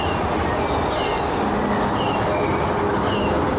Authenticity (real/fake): real